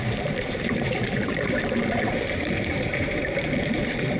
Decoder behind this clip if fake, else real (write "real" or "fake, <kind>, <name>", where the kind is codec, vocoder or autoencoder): fake, vocoder, BigVGAN v2